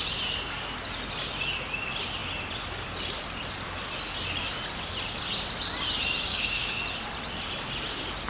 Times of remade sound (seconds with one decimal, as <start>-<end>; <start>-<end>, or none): 6.3-6.8